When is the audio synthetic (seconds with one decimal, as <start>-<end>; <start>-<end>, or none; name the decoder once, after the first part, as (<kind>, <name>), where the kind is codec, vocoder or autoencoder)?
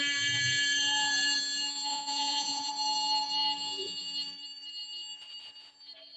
1.9-2.7 (vocoder, Vocos)